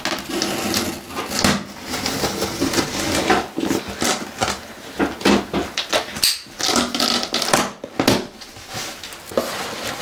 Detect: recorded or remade recorded